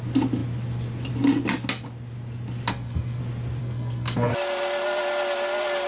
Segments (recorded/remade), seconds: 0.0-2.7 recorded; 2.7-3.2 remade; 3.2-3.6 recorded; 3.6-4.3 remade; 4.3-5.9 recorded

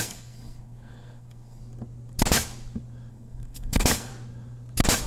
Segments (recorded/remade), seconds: 0.0-1.6 remade; 1.6-3.1 recorded; 3.1-4.1 remade; 4.1-5.1 recorded